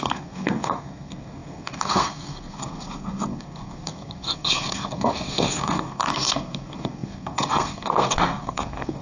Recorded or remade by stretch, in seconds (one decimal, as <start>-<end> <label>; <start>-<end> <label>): 0.0-9.0 remade